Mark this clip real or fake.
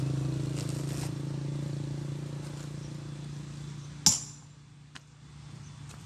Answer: real